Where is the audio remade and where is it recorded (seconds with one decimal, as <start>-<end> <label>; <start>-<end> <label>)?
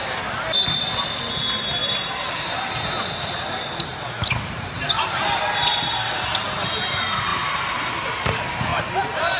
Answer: 0.0-9.4 recorded